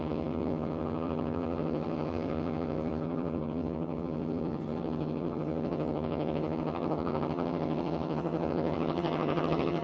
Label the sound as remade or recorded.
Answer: remade